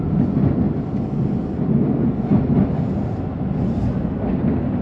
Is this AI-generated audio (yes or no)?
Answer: no